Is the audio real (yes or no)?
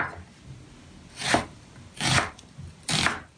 yes